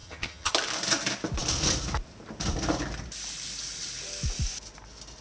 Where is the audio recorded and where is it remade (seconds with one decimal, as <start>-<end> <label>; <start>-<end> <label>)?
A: 0.0-0.5 remade; 0.5-5.2 recorded